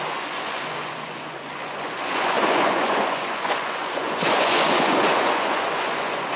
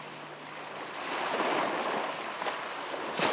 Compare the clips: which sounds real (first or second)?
second